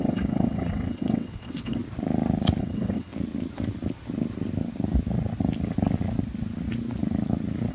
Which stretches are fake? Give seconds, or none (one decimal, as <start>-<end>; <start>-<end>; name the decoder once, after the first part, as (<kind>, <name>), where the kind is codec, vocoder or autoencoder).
0.0-1.8 (vocoder, WaveNeXt); 2.6-3.1